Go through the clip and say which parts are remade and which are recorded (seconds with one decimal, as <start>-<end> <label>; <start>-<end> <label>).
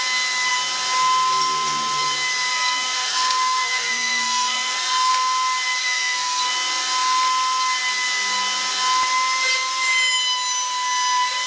0.0-2.5 recorded; 2.5-5.1 remade; 5.1-5.8 recorded; 5.8-6.4 remade; 6.4-11.5 recorded